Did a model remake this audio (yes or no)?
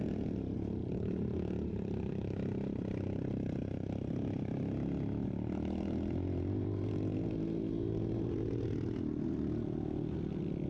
no